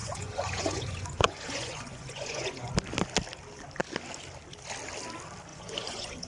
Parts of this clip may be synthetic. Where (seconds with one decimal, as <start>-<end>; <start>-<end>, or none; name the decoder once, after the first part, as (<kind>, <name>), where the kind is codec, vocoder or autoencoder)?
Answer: 0.0-2.7 (vocoder, Vocos); 5.5-6.3